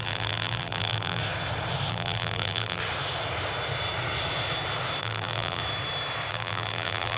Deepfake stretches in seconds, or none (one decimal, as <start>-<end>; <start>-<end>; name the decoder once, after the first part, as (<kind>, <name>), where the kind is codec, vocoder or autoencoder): 0.0-1.2 (vocoder, BigVGAN v2); 1.9-2.8; 5.0-5.6; 6.3-7.2